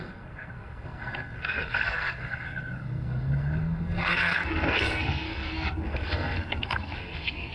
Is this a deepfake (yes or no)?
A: yes